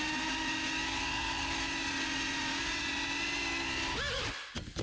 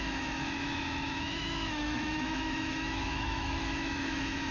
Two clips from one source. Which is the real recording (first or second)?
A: first